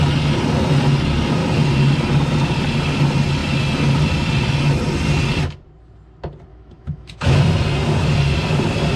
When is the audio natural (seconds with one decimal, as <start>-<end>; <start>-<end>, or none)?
0.0-6.5; 7.4-9.0